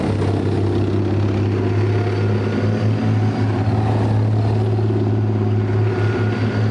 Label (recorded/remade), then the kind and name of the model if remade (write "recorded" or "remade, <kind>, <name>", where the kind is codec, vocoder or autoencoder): recorded